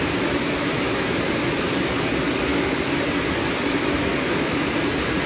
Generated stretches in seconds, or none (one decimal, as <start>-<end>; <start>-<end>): 0.4-1.2; 4.1-4.7

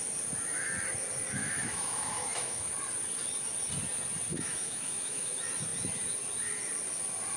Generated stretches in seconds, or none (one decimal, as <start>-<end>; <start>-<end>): 1.4-2.7; 4.3-5.3

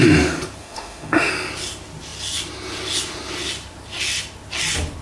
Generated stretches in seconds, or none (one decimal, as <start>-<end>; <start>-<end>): 0.6-1.3

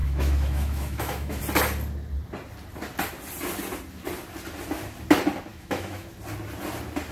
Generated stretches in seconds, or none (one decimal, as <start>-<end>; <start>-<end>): 0.0-1.4; 5.5-6.1

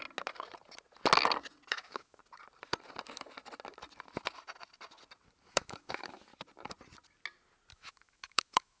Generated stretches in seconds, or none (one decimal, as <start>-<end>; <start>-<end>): 1.7-2.2; 5.5-6.3; 7.7-8.8

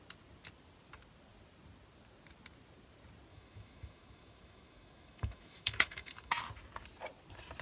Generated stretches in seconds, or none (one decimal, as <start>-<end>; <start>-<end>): 3.3-6.4

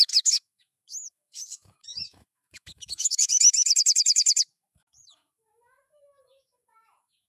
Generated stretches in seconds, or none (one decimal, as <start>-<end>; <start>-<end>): 0.0-7.3

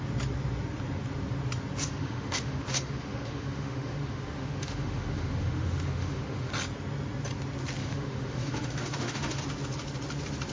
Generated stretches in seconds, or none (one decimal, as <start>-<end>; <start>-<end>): 1.8-6.5; 7.8-9.4